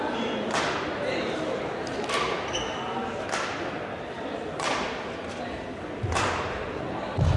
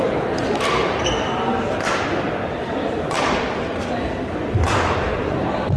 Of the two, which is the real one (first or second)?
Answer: first